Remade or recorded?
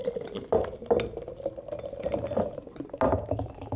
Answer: recorded